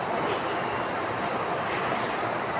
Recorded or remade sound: recorded